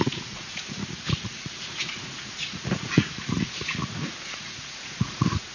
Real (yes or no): no